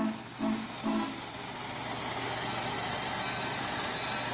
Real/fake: real